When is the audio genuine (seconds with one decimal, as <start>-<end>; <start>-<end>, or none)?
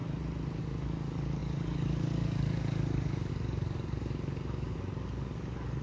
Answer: 0.0-0.6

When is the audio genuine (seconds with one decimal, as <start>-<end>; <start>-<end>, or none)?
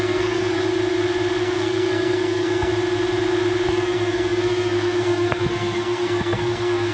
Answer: 0.6-1.4; 2.7-3.7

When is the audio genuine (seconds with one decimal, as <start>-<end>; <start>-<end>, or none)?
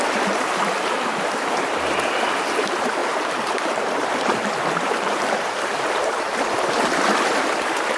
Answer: 0.0-3.0; 6.2-8.0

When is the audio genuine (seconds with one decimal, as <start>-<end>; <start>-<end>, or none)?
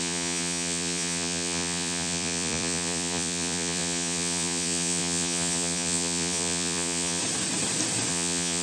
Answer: 7.2-8.1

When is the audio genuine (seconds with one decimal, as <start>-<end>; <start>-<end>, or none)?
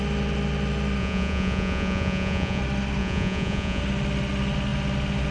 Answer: 0.0-1.0; 2.6-3.0; 3.8-5.3